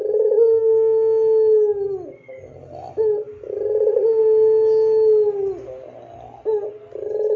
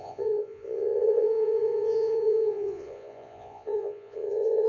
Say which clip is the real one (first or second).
first